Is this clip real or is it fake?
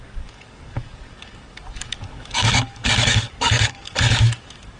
fake